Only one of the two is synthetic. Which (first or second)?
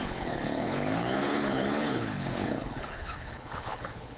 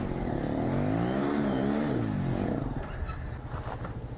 first